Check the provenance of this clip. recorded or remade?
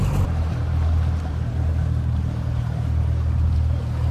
recorded